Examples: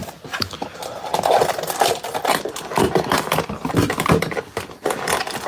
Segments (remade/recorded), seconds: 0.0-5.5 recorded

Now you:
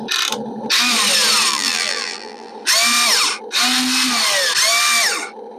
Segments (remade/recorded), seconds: 0.0-1.5 recorded; 1.5-2.5 remade; 2.5-5.6 recorded